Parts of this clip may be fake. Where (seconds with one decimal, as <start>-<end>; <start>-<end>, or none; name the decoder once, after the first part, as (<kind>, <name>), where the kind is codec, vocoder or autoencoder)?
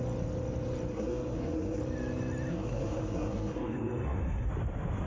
0.9-1.8 (codec, SNAC); 2.5-4.5